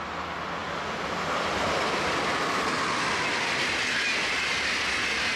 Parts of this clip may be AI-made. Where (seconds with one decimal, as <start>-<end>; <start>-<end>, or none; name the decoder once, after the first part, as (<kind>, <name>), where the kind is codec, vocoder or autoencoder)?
none